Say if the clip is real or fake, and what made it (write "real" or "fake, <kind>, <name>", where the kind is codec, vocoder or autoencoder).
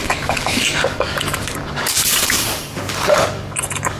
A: fake, codec, DAC